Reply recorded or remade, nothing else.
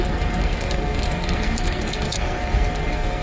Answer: remade